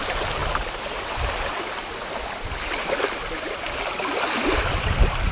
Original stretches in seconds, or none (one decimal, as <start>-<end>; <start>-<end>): 0.0-5.3